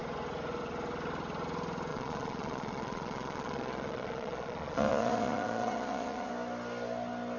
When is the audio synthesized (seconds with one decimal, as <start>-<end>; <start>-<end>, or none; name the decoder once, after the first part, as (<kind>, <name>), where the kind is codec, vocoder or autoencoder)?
1.9-6.3 (vocoder, Vocos)